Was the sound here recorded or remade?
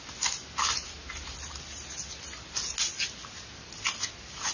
recorded